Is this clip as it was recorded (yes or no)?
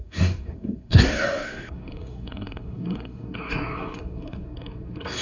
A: no